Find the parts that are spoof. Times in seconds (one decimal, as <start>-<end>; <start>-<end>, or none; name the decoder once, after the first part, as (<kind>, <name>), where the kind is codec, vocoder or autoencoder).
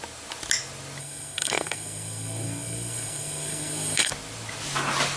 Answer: 1.0-4.1 (codec, SNAC)